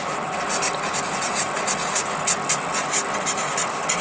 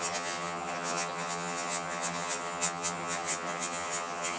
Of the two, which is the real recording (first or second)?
first